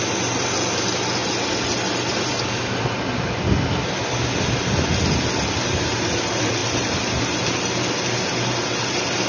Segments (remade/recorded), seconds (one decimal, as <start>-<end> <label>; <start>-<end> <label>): 0.0-9.3 recorded